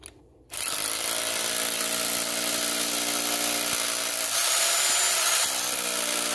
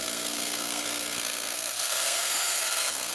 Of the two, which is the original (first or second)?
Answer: first